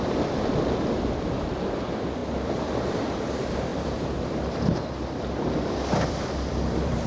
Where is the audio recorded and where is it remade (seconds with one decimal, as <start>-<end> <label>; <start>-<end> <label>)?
0.0-7.1 remade